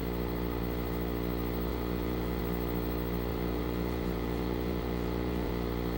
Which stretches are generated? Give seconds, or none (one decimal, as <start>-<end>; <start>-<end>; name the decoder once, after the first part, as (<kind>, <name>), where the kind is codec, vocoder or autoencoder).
1.7-2.4 (vocoder, Vocos); 3.3-5.5